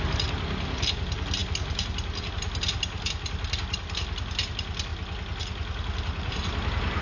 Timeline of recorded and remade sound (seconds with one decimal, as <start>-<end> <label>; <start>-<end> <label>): 0.0-7.0 recorded